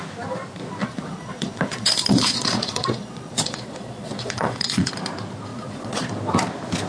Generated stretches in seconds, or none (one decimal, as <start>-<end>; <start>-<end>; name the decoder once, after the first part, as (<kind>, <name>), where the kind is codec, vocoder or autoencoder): 0.8-4.9 (vocoder, Vocos); 5.5-6.1